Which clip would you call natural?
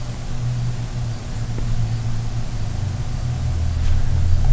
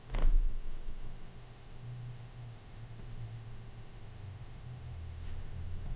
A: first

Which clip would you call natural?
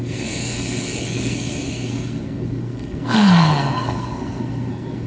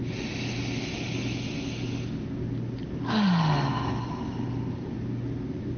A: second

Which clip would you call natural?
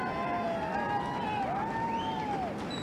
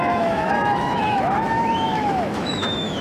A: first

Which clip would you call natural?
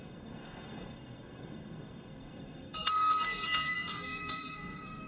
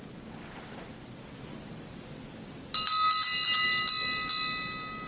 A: second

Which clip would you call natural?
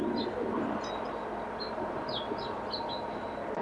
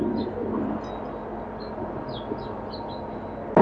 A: second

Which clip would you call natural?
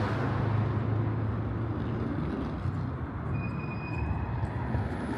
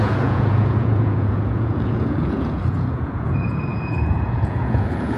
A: first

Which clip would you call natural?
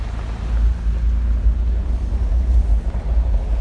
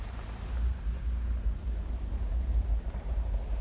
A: first